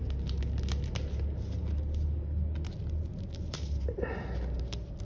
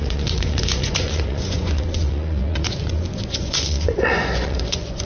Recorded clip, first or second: first